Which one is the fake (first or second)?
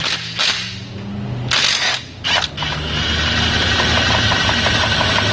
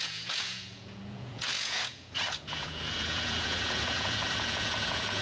second